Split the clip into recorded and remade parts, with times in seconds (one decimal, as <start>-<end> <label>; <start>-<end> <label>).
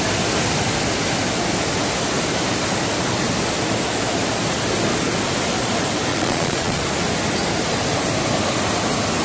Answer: 0.0-6.1 recorded; 6.1-6.8 remade; 6.8-9.2 recorded